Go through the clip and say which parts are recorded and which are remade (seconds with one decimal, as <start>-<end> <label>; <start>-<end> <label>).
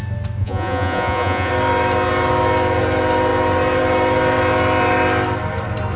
0.0-0.4 recorded; 0.4-1.5 remade; 1.5-6.0 recorded